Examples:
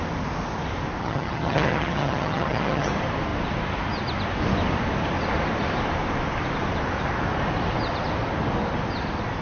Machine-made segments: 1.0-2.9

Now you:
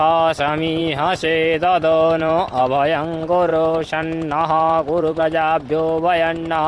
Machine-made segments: 0.8-2.6; 3.5-5.2

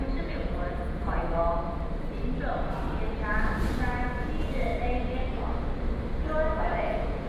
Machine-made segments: 0.0-1.4; 4.0-4.7; 6.6-7.3

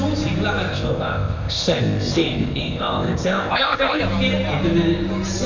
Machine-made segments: 0.7-4.0